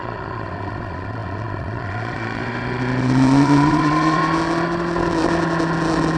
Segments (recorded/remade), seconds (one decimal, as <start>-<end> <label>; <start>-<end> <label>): 0.0-2.4 remade; 2.4-3.0 recorded; 3.0-4.2 remade; 4.2-6.2 recorded